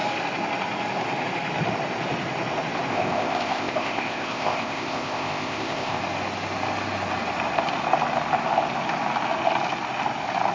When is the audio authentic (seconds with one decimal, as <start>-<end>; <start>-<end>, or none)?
0.0-2.9; 6.0-10.5